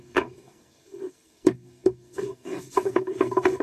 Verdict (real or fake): fake